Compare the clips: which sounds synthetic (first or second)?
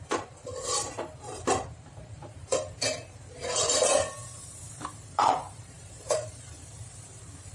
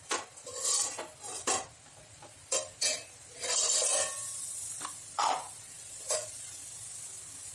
first